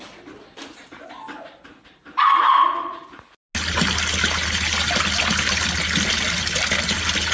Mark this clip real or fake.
real